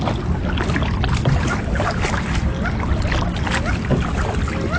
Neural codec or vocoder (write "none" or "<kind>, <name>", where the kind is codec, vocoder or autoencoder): none